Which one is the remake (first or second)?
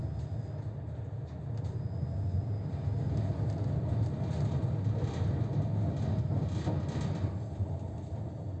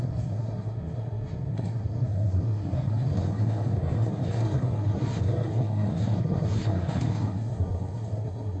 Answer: second